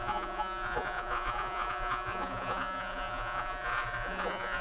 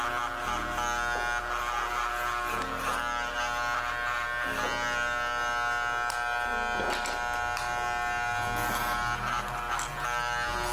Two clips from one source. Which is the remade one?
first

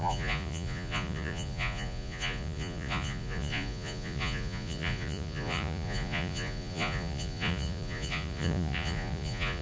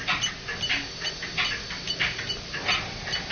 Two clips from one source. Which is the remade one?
first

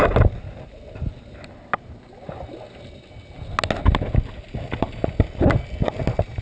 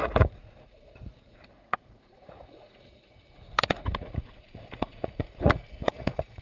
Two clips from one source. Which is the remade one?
second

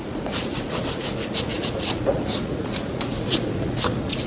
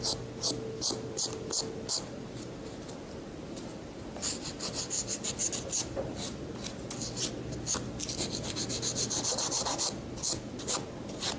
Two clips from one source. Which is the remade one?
first